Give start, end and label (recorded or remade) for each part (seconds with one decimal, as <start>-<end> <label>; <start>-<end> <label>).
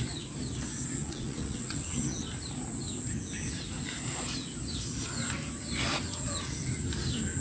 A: 0.0-1.0 recorded; 1.0-2.0 remade; 2.0-7.4 recorded